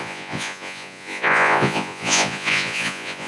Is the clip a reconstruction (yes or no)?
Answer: yes